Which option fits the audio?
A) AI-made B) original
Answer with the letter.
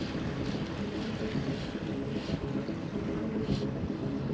B